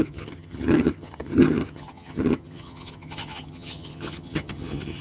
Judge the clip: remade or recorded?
remade